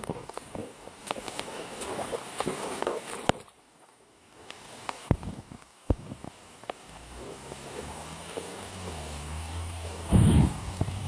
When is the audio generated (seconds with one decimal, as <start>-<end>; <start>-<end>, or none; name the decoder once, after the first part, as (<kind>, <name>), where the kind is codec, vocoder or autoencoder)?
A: 0.0-3.1 (codec, DAC); 3.6-11.1